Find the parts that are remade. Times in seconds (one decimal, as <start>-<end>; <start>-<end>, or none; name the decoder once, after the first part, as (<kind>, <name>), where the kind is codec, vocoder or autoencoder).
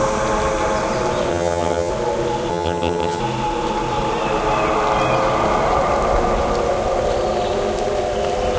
1.3-1.9 (vocoder, HiFi-GAN); 2.5-3.2